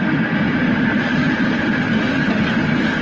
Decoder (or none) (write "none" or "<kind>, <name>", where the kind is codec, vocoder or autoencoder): none